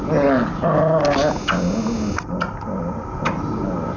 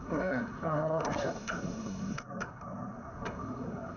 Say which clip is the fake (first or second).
second